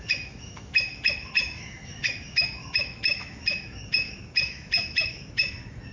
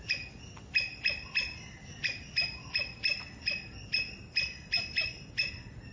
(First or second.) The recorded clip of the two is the second